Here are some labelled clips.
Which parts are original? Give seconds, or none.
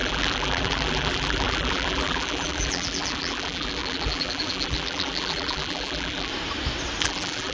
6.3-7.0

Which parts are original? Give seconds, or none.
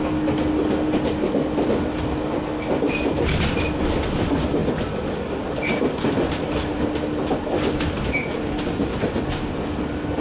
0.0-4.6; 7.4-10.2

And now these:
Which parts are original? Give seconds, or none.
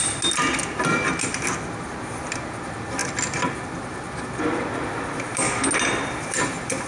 0.0-6.9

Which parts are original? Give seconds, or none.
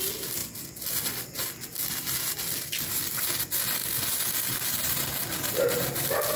0.0-6.4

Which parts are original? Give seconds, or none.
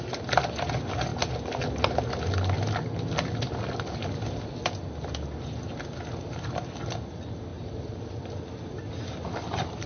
0.0-7.5; 8.0-9.9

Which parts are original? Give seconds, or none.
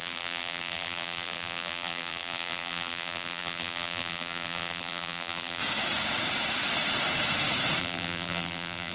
5.6-7.8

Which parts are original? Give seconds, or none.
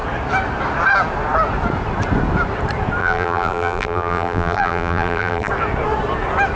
0.0-3.0; 5.5-6.6